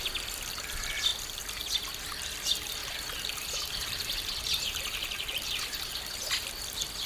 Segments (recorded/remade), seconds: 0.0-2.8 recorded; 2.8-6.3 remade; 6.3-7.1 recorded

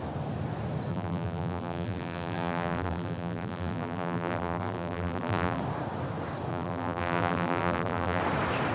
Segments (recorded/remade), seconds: 0.0-0.9 recorded; 0.9-5.6 remade; 5.6-6.5 recorded; 6.5-8.2 remade; 8.2-8.7 recorded

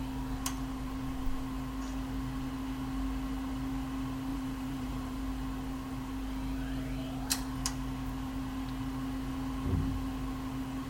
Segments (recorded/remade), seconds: 0.0-4.3 recorded; 4.3-5.2 remade; 5.2-10.9 recorded

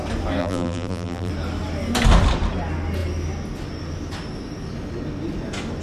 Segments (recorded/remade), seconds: 0.0-0.4 recorded; 0.4-1.3 remade; 1.3-5.8 recorded

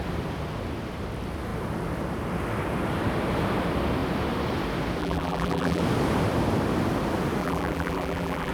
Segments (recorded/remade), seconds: 0.0-5.0 recorded; 5.0-5.8 remade; 5.8-7.4 recorded; 7.4-8.5 remade